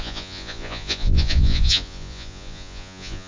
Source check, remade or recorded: remade